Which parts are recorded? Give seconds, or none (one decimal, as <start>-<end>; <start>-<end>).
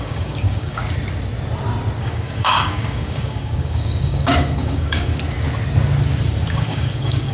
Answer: 0.8-2.0; 5.1-6.5